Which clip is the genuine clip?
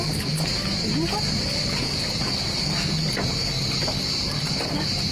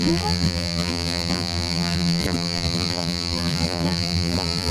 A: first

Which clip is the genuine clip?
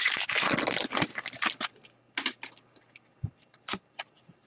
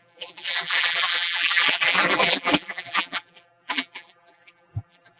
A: first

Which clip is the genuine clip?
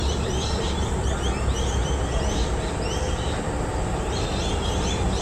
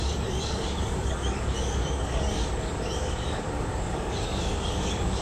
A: first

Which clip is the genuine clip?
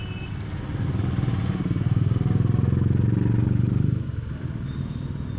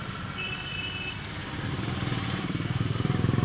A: first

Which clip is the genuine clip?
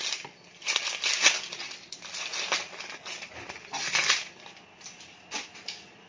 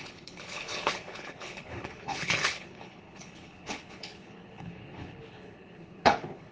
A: first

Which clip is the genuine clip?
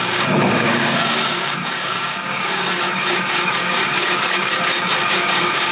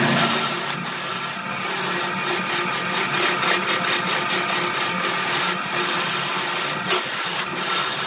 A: second